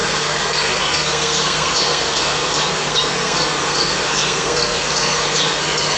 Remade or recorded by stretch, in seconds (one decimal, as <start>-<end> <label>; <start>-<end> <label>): 0.0-6.0 remade